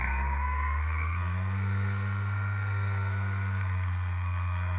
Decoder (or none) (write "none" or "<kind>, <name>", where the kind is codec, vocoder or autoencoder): codec, SNAC